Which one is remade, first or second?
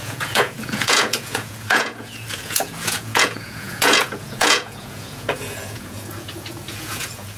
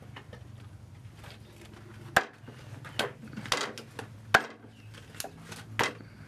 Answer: first